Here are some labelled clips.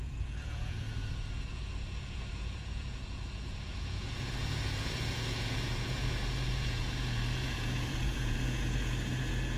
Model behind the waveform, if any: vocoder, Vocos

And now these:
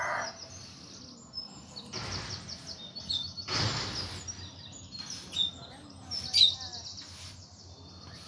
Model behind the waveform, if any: none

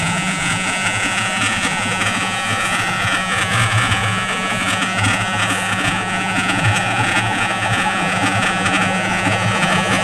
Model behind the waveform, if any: vocoder, Vocos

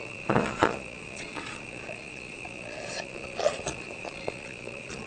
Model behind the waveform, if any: vocoder, Vocos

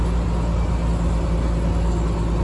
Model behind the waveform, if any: none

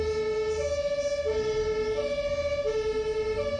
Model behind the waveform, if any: none